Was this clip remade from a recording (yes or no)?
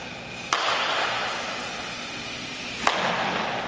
no